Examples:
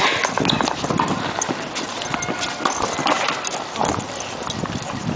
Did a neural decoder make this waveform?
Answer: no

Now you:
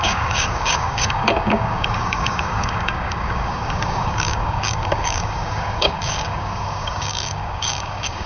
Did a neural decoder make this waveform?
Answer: yes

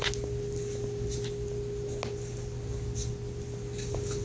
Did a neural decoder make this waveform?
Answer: no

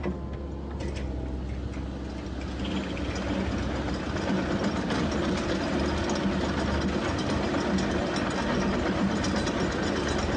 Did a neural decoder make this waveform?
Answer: no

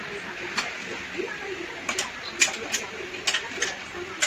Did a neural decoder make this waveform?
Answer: no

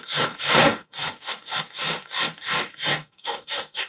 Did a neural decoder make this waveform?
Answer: yes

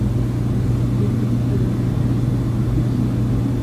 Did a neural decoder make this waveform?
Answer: no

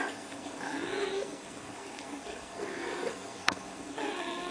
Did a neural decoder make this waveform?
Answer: yes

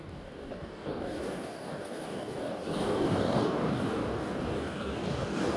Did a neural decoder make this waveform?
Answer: yes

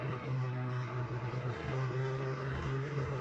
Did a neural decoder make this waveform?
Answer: yes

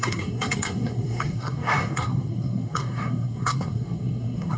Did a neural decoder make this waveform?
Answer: yes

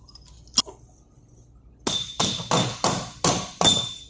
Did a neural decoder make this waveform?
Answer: no